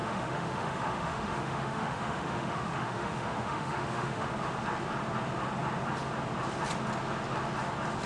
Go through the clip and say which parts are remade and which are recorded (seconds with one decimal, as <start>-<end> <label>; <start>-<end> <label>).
0.0-4.3 remade; 4.3-8.1 recorded